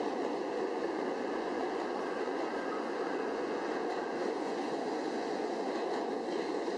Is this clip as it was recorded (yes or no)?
no